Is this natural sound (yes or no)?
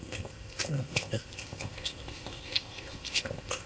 no